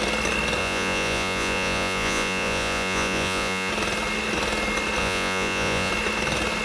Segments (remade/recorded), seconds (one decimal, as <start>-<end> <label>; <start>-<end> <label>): 0.0-0.6 recorded; 0.6-3.7 remade; 3.7-5.0 recorded; 5.0-5.9 remade; 5.9-6.6 recorded